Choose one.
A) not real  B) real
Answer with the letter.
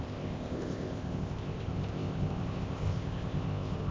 A